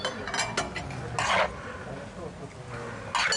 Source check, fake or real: real